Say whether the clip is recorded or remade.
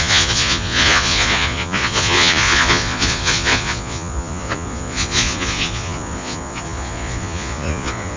remade